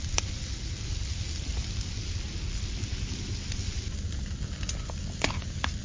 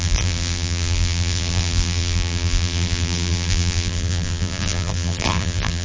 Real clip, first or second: first